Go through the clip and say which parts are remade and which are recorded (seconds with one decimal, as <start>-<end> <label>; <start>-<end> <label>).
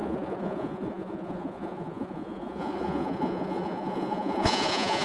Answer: 0.0-5.0 remade